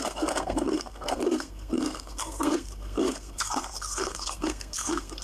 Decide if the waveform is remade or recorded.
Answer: remade